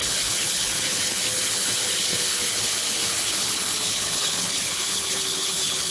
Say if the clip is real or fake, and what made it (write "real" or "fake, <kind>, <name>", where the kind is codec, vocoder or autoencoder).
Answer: fake, codec, HILCodec